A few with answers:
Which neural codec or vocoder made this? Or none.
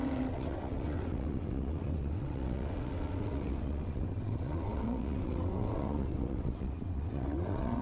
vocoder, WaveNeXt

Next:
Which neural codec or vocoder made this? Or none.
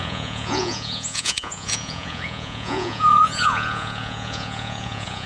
vocoder, Vocos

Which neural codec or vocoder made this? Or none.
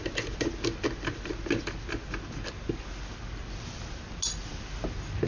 none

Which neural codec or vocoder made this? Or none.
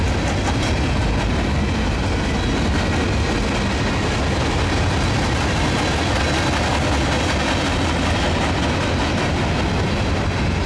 none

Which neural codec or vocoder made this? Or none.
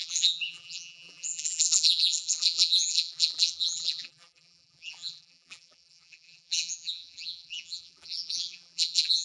vocoder, BigVGAN v2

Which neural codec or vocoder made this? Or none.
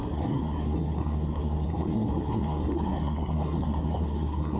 codec, SNAC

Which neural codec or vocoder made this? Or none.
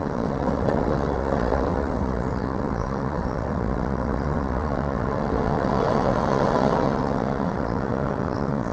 vocoder, WaveNeXt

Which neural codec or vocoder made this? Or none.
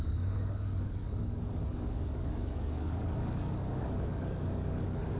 codec, DAC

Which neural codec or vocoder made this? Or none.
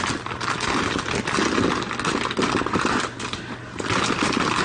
none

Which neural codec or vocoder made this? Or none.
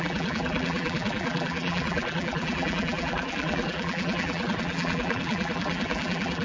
vocoder, BigVGAN v2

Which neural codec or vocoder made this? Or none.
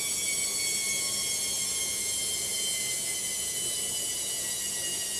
none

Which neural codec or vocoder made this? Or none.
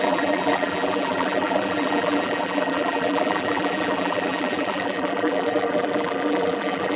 vocoder, BigVGAN v2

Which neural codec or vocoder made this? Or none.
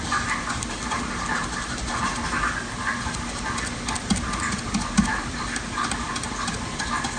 none